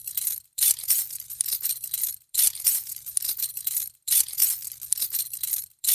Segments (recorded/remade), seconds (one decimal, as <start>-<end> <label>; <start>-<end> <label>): 0.0-4.4 remade; 4.4-5.0 recorded; 5.0-5.9 remade